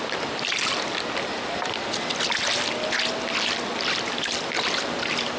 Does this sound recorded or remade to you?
recorded